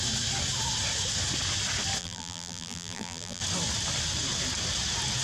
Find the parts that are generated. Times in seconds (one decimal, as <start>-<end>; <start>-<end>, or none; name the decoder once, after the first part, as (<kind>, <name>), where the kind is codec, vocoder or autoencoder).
2.0-3.4 (vocoder, BigVGAN v2)